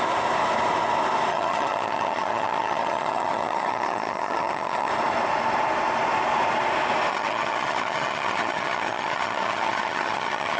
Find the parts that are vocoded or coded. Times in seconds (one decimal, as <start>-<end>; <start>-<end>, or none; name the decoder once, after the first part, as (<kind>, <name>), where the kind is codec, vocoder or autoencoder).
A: 1.3-4.9 (vocoder, HiFi-GAN); 7.1-10.6